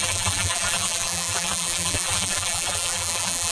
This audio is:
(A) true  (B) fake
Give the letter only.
B